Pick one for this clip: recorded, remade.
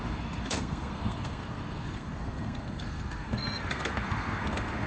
remade